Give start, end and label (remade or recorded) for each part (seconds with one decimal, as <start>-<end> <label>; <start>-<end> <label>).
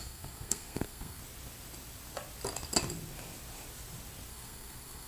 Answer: 0.0-1.2 remade; 1.2-4.3 recorded; 4.3-5.1 remade